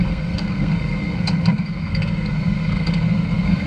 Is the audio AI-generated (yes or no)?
yes